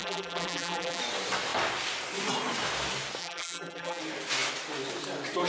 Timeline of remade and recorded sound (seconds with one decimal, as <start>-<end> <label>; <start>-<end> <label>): 0.0-1.0 remade; 1.0-3.2 recorded; 3.2-4.0 remade; 4.0-5.5 recorded